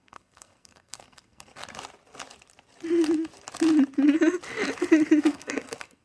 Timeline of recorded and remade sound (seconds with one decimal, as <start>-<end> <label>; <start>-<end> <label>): 0.0-1.6 remade; 1.6-5.2 recorded; 5.2-6.0 remade